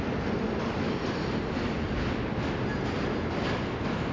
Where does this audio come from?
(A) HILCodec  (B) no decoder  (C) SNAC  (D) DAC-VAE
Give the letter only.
B